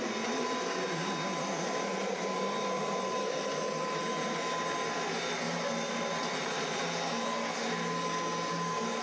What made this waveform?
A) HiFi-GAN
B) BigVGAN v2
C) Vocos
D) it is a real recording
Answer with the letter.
D